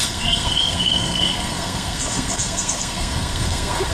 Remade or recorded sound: remade